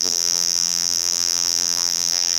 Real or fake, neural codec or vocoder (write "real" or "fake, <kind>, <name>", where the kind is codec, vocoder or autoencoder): fake, vocoder, BigVGAN v2